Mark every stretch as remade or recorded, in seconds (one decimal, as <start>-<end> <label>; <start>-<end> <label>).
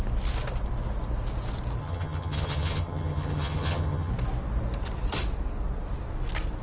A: 0.0-1.8 recorded; 1.8-4.1 remade; 4.1-6.6 recorded